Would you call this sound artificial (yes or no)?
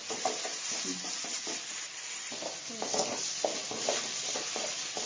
no